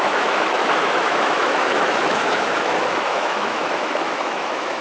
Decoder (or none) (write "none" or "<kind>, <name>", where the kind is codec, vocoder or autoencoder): autoencoder, DAC-VAE